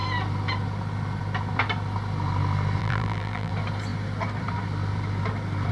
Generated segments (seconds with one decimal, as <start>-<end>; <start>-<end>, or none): 2.8-3.5